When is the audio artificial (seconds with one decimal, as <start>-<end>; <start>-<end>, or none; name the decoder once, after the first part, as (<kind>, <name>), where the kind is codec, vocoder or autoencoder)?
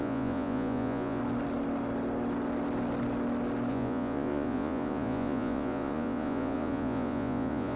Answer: 0.0-1.2 (vocoder, Vocos); 3.7-7.8